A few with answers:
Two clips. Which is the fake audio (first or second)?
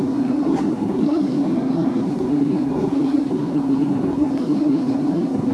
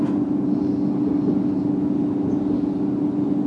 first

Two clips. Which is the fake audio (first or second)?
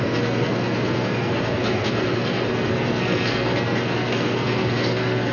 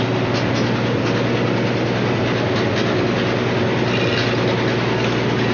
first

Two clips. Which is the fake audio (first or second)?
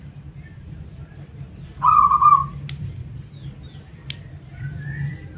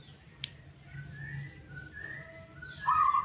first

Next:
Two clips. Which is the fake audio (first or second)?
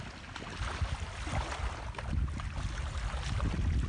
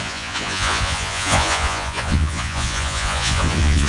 second